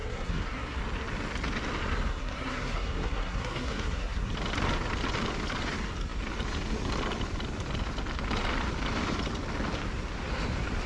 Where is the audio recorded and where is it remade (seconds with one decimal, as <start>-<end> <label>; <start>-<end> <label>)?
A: 0.0-0.8 remade; 0.8-2.1 recorded; 2.1-4.3 remade; 4.3-10.9 recorded